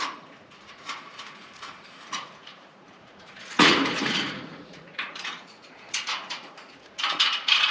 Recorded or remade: remade